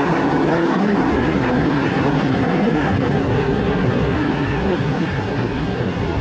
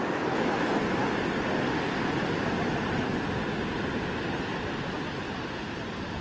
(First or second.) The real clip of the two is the second